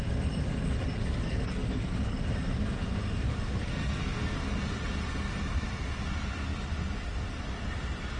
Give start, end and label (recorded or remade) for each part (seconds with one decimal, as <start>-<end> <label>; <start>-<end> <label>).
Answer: 0.0-1.0 recorded; 1.0-2.2 remade; 2.2-3.6 recorded; 3.6-4.2 remade; 4.2-8.2 recorded